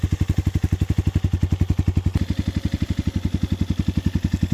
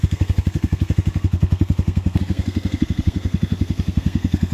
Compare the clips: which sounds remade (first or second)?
second